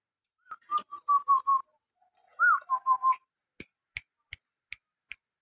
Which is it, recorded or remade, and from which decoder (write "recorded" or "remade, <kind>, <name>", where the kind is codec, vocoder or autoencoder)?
recorded